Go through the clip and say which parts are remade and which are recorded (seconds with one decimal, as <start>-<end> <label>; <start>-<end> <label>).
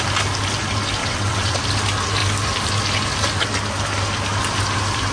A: 0.0-1.0 recorded; 1.0-1.6 remade; 1.6-5.1 recorded